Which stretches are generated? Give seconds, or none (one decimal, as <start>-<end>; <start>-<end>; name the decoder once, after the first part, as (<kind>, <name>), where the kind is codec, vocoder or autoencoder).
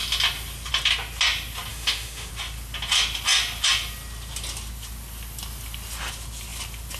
1.7-2.3 (autoencoder, DAC-VAE)